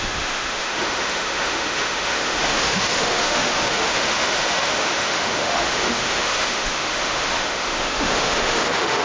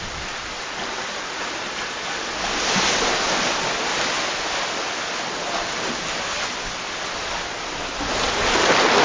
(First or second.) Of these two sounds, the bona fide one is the second